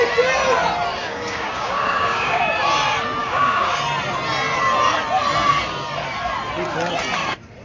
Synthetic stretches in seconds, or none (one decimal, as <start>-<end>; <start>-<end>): 1.0-2.4; 3.2-3.7